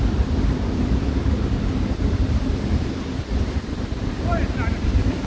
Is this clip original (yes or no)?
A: yes